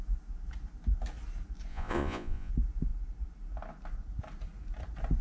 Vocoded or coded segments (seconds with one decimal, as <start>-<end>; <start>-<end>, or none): 1.7-2.5